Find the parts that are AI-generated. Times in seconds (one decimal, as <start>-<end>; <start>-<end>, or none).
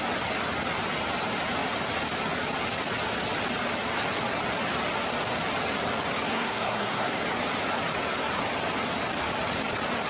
6.3-7.2